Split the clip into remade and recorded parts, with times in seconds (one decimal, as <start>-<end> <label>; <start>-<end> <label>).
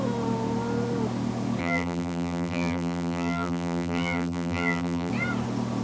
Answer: 0.0-1.6 recorded; 1.6-5.1 remade; 5.1-5.8 recorded